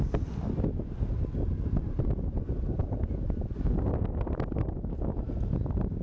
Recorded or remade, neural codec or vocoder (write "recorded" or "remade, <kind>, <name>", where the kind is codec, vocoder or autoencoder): recorded